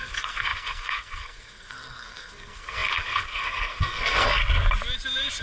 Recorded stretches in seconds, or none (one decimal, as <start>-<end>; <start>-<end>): 4.4-5.4